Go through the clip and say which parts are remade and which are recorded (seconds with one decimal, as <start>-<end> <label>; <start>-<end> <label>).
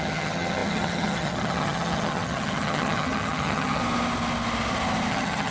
0.0-3.8 remade; 3.8-5.1 recorded; 5.1-5.5 remade